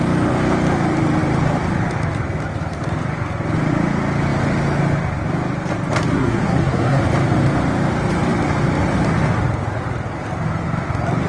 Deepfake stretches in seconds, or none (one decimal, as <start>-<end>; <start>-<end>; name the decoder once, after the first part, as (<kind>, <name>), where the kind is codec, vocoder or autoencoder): 6.1-7.0 (codec, SNAC)